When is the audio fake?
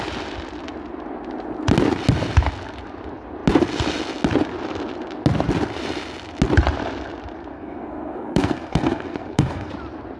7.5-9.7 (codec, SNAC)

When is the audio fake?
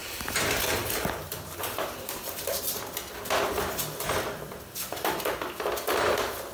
0.0-2.6 (vocoder, BigVGAN v2)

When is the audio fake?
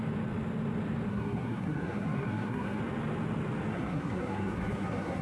1.1-2.8 (codec, SNAC); 3.7-5.2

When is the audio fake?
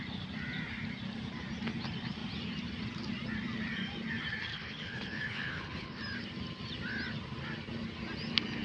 4.5-6.0 (codec, HILCodec)